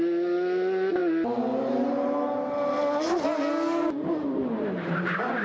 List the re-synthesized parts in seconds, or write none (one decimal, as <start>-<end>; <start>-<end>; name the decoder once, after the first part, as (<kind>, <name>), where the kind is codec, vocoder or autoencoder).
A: none